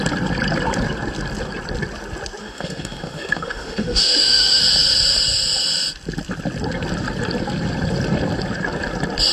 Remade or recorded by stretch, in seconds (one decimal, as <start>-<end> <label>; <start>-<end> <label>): 0.0-2.4 recorded; 2.4-4.6 remade; 4.6-9.3 recorded